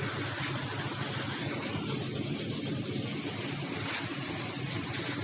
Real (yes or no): yes